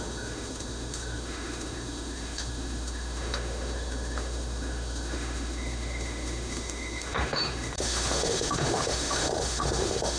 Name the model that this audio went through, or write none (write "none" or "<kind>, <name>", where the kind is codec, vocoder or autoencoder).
autoencoder, DAC-VAE